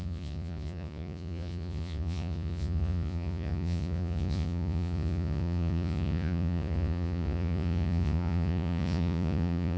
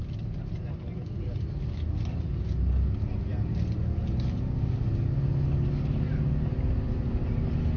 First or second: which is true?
second